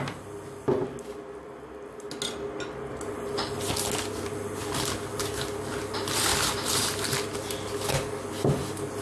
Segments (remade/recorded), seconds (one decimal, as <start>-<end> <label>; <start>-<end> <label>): 0.0-9.0 recorded

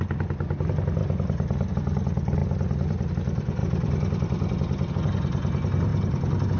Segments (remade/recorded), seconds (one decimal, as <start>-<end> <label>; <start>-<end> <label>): 0.0-2.4 recorded; 2.4-3.1 remade; 3.1-3.6 recorded; 3.6-4.9 remade; 4.9-6.6 recorded